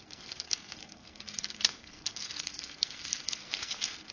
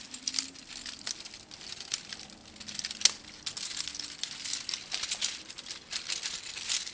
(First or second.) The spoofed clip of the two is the first